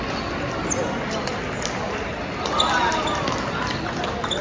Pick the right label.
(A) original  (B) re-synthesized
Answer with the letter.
A